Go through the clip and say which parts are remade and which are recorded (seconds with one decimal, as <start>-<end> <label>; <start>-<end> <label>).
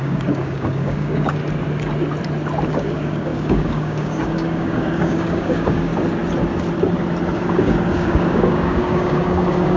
0.0-1.4 remade; 1.4-2.7 recorded; 2.7-5.9 remade; 5.9-7.4 recorded; 7.4-9.8 remade